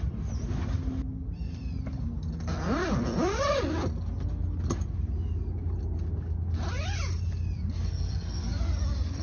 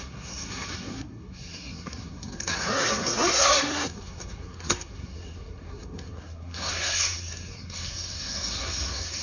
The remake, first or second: second